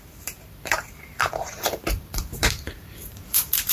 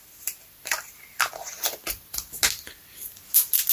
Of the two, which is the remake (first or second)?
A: first